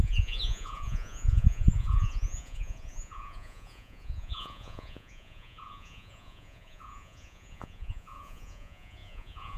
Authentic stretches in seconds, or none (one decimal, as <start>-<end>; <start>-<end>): none